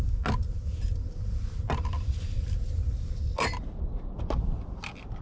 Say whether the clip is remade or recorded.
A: recorded